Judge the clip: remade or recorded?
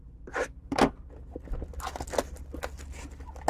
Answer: recorded